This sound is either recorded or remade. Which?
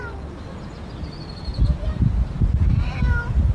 recorded